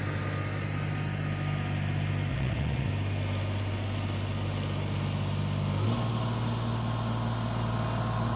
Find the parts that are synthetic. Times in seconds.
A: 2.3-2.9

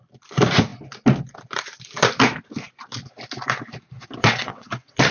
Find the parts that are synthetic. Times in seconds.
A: 4.2-5.1

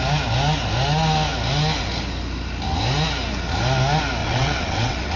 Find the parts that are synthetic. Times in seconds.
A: 4.2-5.2

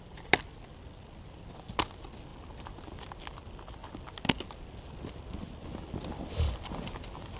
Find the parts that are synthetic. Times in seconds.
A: none

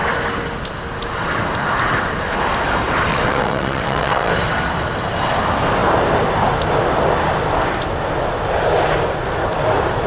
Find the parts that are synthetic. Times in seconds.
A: 3.1-4.3

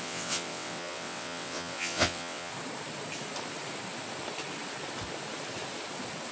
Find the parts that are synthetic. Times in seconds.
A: 0.0-2.5

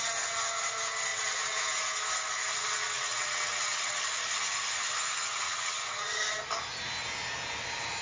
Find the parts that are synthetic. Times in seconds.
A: 1.1-1.6; 2.5-4.0; 5.3-6.2

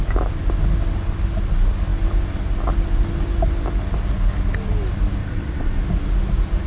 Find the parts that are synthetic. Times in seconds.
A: 5.2-5.8